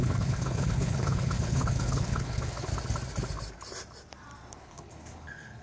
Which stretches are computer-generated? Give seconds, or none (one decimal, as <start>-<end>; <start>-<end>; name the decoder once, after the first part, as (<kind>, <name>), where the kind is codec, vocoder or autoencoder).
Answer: 0.0-2.7 (codec, HILCodec); 4.6-5.6